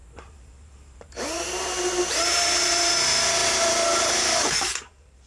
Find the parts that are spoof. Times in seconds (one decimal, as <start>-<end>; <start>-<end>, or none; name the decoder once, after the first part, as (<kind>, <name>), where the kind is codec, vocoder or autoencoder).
0.0-5.3 (vocoder, BigVGAN v2)